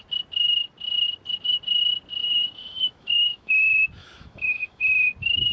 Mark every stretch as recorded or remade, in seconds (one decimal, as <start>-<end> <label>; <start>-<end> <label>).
0.0-2.2 recorded; 2.2-3.5 remade; 3.5-4.0 recorded; 4.0-4.8 remade; 4.8-5.5 recorded